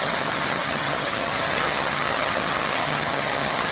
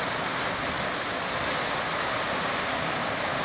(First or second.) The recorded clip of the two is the second